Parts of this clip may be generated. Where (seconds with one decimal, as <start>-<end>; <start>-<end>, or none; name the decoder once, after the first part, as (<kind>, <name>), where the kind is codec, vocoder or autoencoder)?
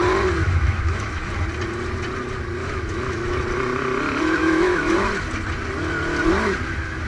0.4-1.3 (autoencoder, DAC-VAE); 2.6-3.4; 4.4-5.1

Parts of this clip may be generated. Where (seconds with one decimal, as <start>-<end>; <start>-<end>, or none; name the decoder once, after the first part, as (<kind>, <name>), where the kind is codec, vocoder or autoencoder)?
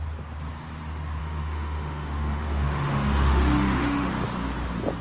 1.2-4.1 (autoencoder, DAC-VAE)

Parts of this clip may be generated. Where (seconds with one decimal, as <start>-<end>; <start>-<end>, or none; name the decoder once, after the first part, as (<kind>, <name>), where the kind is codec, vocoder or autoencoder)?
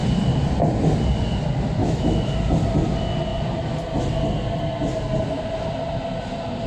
1.8-2.3 (autoencoder, DAC-VAE)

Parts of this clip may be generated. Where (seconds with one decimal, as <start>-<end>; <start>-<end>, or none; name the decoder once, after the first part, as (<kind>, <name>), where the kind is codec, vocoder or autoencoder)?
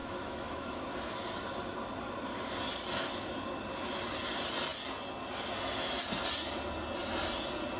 0.0-0.8 (autoencoder, DAC-VAE)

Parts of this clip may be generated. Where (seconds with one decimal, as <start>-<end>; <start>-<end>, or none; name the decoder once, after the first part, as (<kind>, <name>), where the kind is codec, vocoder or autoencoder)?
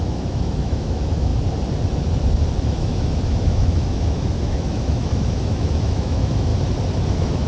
0.0-1.3 (autoencoder, DAC-VAE); 2.6-6.5; 7.1-7.5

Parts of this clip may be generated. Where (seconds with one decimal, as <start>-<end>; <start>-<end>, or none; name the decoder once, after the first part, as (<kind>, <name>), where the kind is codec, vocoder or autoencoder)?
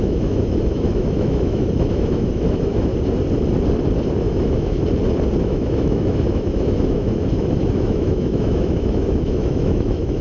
0.0-2.9 (autoencoder, DAC-VAE); 4.2-4.8; 5.4-10.2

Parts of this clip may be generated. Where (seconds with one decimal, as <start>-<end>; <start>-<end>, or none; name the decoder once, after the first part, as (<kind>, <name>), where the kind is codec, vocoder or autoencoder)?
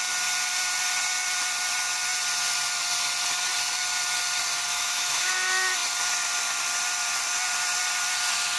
4.7-5.3 (autoencoder, DAC-VAE)